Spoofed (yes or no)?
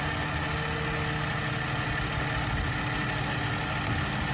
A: no